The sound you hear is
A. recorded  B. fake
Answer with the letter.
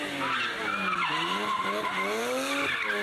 A